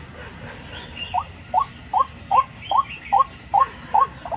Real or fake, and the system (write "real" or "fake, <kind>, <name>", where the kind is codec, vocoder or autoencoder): real